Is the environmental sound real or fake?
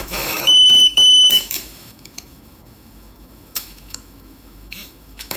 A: fake